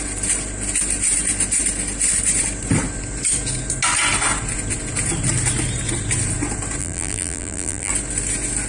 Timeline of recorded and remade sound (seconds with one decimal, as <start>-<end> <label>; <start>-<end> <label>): 0.0-6.8 recorded; 6.8-7.9 remade; 7.9-8.7 recorded